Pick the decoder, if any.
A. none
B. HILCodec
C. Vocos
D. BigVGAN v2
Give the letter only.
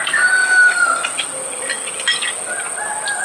A